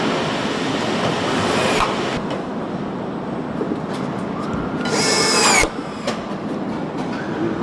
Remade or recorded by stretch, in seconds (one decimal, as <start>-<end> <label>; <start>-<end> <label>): 0.0-7.6 recorded